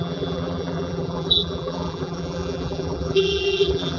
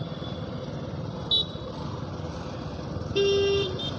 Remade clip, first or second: first